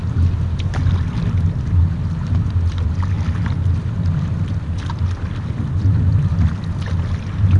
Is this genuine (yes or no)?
yes